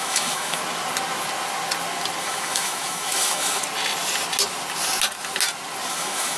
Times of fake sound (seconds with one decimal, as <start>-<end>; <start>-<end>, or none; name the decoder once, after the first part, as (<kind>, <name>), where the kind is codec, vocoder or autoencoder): 0.0-0.6 (autoencoder, DAC-VAE); 2.2-3.6; 5.9-6.4